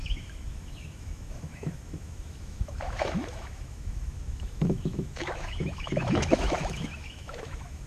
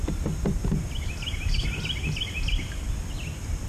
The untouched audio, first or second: second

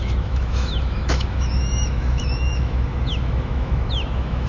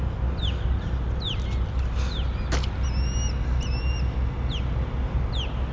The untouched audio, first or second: second